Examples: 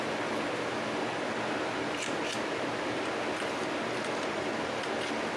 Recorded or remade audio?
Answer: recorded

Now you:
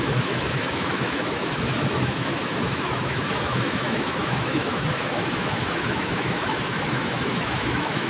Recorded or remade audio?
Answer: remade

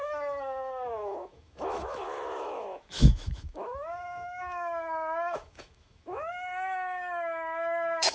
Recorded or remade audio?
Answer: remade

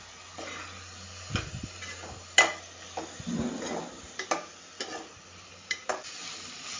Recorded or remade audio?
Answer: recorded